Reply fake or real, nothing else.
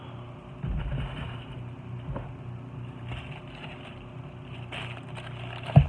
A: real